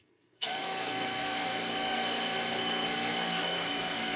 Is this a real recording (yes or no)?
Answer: no